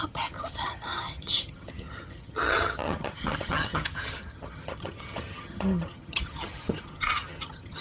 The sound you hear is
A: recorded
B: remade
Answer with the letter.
B